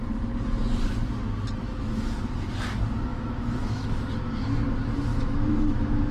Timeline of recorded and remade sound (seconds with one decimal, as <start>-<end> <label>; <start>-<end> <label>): 0.0-1.6 recorded; 1.6-2.2 remade; 2.2-3.1 recorded; 3.1-4.1 remade; 4.1-5.1 recorded; 5.1-6.1 remade